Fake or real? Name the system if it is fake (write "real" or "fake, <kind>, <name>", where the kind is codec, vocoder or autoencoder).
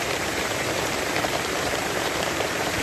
fake, vocoder, BigVGAN v2